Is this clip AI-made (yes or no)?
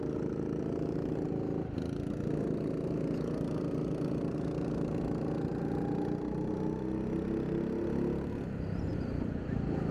no